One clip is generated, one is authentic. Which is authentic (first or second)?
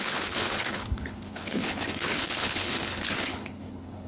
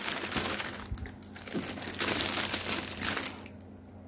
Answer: second